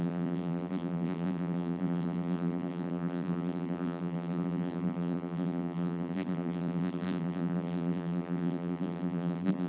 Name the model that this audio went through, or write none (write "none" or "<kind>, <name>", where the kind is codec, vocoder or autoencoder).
vocoder, BigVGAN v2